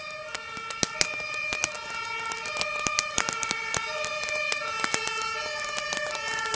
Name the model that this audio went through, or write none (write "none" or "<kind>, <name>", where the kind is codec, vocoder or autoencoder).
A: none